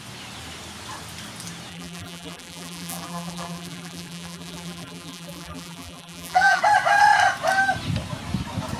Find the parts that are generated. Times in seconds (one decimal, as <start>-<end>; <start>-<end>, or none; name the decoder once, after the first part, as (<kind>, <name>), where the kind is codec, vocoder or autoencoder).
1.7-6.6 (vocoder, BigVGAN v2)